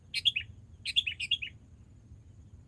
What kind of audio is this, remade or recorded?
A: recorded